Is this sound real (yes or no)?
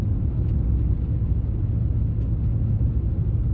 yes